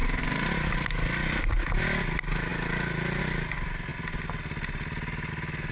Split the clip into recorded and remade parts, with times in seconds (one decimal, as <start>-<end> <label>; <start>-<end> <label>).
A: 0.0-5.7 recorded